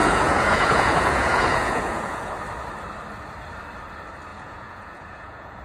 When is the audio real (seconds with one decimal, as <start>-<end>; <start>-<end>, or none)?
2.3-4.3